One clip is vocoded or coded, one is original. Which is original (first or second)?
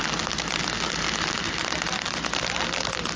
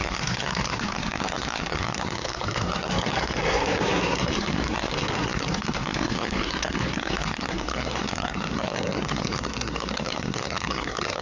first